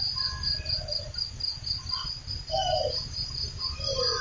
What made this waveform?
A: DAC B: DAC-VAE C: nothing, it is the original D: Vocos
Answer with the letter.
C